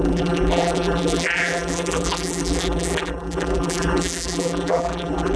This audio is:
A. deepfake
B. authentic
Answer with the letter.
A